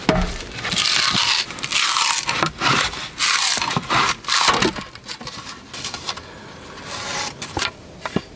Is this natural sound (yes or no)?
yes